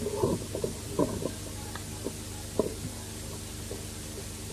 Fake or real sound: real